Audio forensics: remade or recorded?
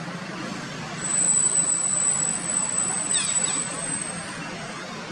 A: recorded